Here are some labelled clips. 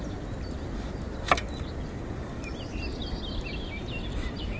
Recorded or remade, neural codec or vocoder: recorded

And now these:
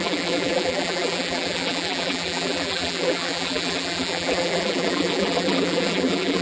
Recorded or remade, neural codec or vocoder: remade, vocoder, BigVGAN v2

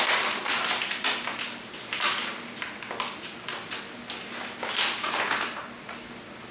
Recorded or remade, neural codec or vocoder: recorded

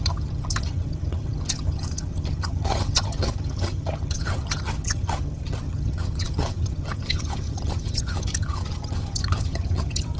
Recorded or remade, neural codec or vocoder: remade, vocoder, HiFi-GAN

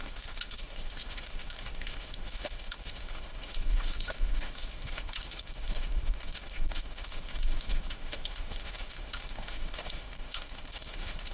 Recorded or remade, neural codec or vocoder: remade, autoencoder, DAC-VAE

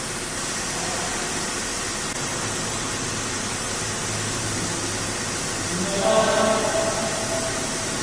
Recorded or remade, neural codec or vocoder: recorded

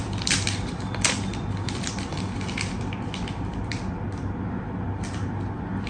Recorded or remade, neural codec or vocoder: remade, vocoder, BigVGAN v2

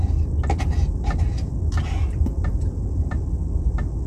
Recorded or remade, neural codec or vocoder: recorded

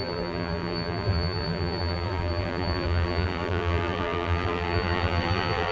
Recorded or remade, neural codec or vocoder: remade, vocoder, BigVGAN v2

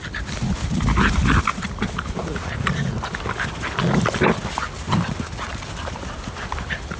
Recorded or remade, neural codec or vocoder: recorded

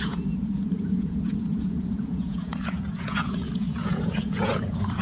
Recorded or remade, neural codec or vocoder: remade, vocoder, Vocos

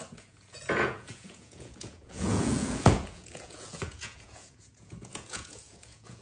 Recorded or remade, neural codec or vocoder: remade, vocoder, Vocos